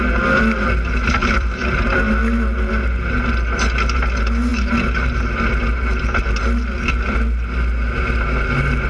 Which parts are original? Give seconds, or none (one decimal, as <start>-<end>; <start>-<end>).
0.0-1.2; 2.0-8.9